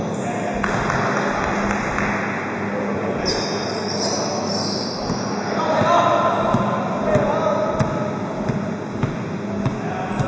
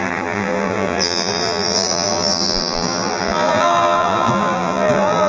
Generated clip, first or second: second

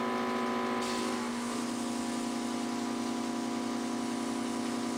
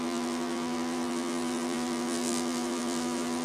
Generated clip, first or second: second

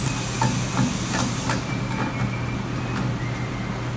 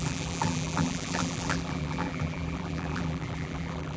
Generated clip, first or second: second